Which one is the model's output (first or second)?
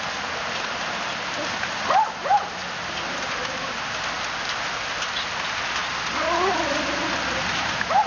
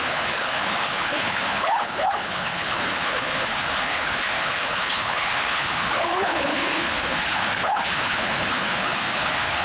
second